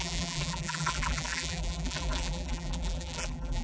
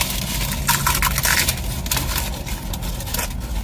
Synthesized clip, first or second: first